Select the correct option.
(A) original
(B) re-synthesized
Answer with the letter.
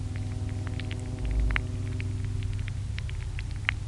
A